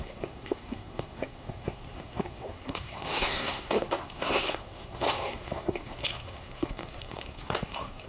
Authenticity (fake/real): fake